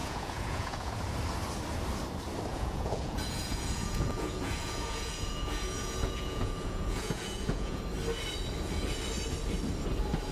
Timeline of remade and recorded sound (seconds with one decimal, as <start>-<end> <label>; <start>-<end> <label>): 0.0-0.9 remade; 0.9-2.5 recorded; 2.5-7.8 remade; 7.8-10.3 recorded